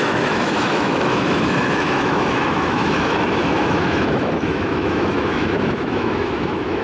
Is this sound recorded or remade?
remade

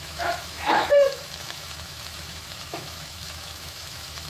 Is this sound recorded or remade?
remade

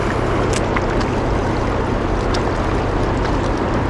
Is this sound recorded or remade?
recorded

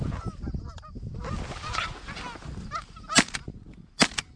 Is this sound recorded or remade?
recorded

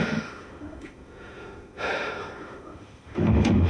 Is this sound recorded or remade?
remade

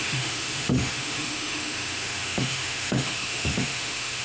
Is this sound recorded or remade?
remade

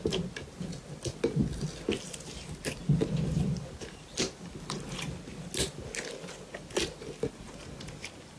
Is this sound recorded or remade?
recorded